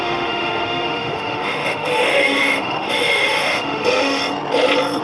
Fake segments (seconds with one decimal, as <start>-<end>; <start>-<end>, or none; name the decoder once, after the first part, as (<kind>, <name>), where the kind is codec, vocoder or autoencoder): 0.0-4.2 (autoencoder, DAC-VAE)